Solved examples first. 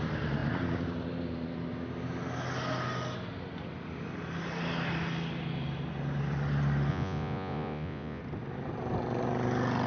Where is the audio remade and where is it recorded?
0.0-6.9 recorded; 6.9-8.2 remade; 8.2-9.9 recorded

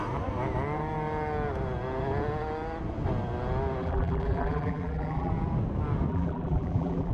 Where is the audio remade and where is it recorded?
0.0-3.8 recorded; 3.8-5.3 remade; 5.3-6.1 recorded; 6.1-7.1 remade

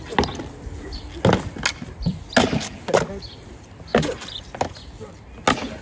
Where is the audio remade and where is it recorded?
0.0-5.8 recorded